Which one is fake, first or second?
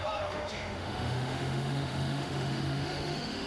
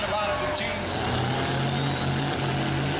first